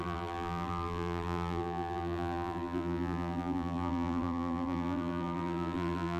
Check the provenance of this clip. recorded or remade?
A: remade